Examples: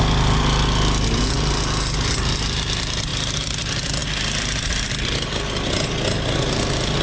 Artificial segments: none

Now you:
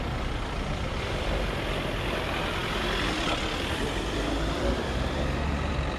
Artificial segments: 0.0-6.0 (vocoder, BigVGAN v2)